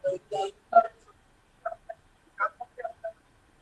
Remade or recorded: remade